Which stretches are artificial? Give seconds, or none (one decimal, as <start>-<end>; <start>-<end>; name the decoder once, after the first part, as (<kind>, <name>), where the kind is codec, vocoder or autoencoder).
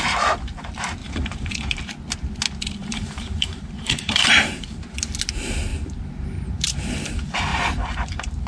1.0-1.7 (vocoder, BigVGAN v2); 2.8-4.8; 7.5-8.5